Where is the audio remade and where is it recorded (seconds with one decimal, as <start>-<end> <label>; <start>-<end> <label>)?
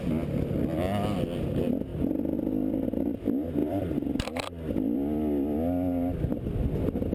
0.0-1.9 recorded; 1.9-3.0 remade; 3.0-3.6 recorded; 3.6-4.7 remade; 4.7-7.1 recorded